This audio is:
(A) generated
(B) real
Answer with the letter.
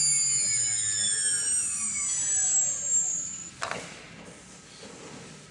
B